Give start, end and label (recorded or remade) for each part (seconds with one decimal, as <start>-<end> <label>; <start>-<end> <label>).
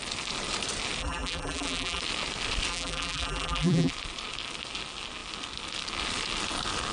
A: 0.0-1.0 recorded; 1.0-2.0 remade; 2.0-2.7 recorded; 2.7-3.9 remade; 3.9-6.9 recorded